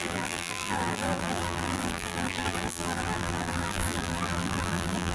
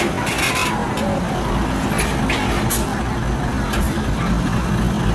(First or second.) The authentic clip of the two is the second